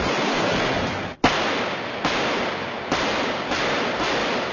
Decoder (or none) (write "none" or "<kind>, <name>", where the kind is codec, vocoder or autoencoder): none